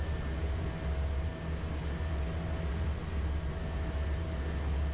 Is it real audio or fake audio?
real